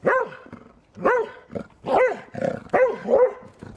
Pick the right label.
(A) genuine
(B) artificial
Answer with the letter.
A